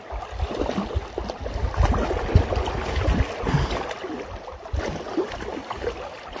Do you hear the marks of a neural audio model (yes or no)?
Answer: no